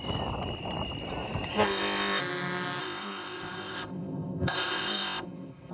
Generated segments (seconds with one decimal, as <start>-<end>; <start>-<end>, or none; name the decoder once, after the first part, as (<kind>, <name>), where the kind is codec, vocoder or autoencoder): 1.5-2.2 (codec, ZipCodec); 2.8-5.7